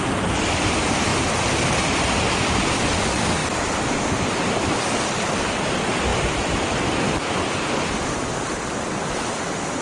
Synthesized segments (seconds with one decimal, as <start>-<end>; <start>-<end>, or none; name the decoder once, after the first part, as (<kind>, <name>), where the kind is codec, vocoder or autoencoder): 1.1-1.6 (vocoder, BigVGAN v2); 3.4-4.1; 6.1-9.1